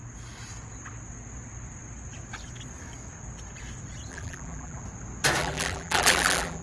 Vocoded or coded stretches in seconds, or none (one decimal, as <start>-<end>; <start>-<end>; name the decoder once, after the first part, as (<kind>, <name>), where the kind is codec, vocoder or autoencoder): 4.1-4.8 (vocoder, BigVGAN v2); 5.4-6.6